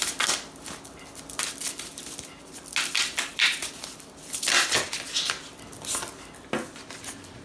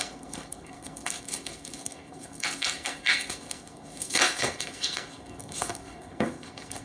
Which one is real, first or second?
first